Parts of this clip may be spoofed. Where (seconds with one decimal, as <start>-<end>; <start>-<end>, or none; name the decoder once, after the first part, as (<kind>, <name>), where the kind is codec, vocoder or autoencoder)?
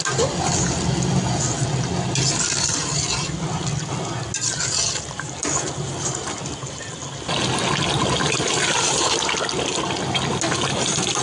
none